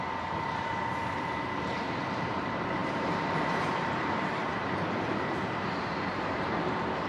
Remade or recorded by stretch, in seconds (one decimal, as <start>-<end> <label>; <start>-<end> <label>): 0.0-2.8 recorded; 2.8-5.7 remade; 5.7-7.1 recorded